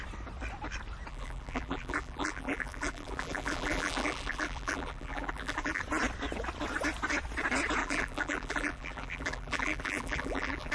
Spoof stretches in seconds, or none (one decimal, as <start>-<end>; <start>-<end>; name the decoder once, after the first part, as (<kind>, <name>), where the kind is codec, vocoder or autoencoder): 1.1-5.8 (vocoder, BigVGAN v2); 7.8-10.7